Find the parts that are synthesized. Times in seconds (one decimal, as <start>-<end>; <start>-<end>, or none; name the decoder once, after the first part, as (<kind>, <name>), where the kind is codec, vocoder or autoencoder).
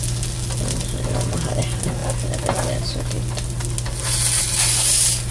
none